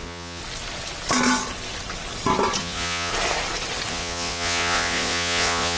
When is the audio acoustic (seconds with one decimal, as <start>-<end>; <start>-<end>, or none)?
0.4-2.6; 3.1-3.9